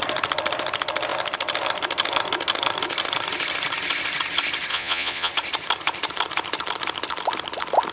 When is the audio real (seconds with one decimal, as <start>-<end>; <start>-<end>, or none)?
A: 0.0-4.7; 5.3-7.9

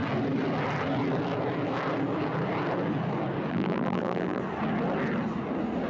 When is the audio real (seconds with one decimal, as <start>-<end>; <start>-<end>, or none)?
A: 0.0-3.5; 4.4-5.9

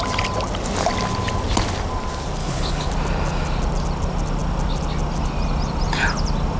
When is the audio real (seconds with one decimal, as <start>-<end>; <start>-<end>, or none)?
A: 0.0-2.4; 2.9-6.6

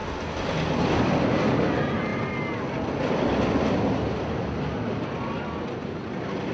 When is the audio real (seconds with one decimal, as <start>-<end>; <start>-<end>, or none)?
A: 0.0-6.5

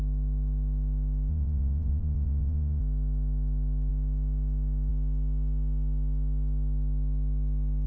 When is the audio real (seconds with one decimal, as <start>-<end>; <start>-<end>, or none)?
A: 0.0-1.3; 2.8-7.9

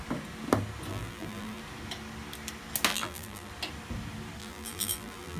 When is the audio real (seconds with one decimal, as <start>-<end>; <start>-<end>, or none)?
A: 0.0-0.9; 1.6-2.9; 3.5-4.4

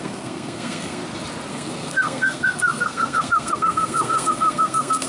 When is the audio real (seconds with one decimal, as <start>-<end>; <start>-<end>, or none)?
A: 1.0-1.5